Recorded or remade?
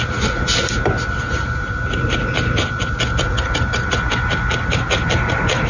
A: recorded